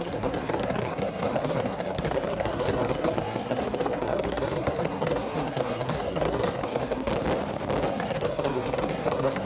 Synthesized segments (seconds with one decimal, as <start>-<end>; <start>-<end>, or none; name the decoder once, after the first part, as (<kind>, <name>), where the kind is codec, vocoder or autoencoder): 0.0-7.1 (codec, SNAC); 7.9-9.5